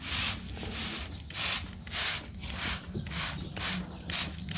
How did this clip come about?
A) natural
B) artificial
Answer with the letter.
A